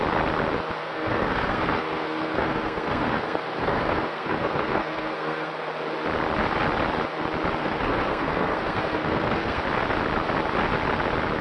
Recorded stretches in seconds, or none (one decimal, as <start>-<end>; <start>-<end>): 0.0-0.8; 5.5-7.6; 9.6-11.4

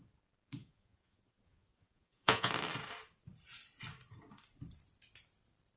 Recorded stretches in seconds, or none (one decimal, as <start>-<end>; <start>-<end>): 0.0-0.6; 2.5-5.8

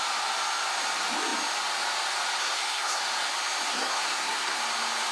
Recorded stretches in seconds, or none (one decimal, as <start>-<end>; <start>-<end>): 0.0-2.4; 3.0-3.7; 4.6-5.1

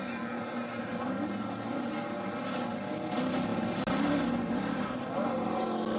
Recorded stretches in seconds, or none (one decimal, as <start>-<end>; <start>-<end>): 0.0-6.0